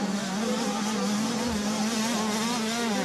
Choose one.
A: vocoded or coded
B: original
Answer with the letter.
B